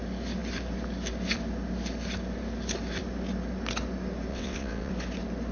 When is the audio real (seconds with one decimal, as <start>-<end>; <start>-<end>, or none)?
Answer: 0.0-4.3; 4.9-5.5